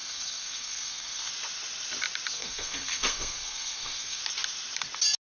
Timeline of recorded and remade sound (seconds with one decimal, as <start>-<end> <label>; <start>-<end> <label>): 0.0-1.3 remade; 1.3-2.3 recorded; 2.3-4.2 remade; 4.2-5.3 recorded